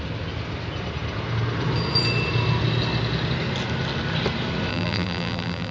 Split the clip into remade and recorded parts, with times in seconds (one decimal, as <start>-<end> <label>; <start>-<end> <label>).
0.0-4.7 recorded; 4.7-5.7 remade